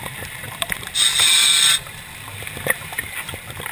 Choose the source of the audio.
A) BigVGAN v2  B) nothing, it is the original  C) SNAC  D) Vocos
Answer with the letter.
B